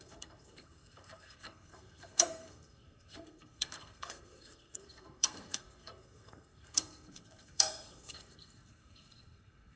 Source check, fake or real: fake